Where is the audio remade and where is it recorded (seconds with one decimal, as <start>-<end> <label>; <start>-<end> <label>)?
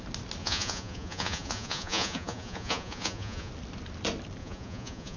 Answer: 0.0-0.4 recorded; 0.4-3.5 remade; 3.5-4.4 recorded; 4.4-5.2 remade